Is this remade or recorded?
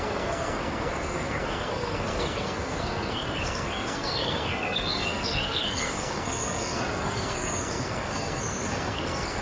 remade